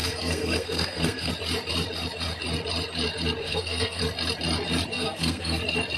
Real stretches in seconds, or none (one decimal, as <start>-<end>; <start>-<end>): 1.3-3.4; 4.0-4.9; 5.6-6.0